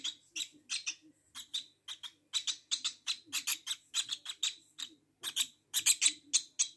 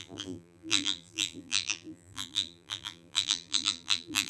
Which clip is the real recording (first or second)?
first